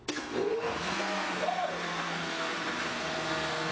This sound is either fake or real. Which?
fake